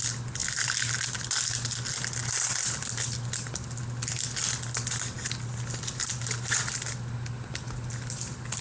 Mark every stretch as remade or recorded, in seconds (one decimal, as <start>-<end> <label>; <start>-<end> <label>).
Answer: 0.0-8.6 recorded